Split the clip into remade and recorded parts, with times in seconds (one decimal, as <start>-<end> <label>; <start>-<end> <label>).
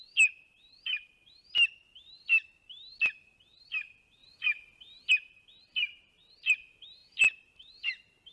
0.0-8.3 recorded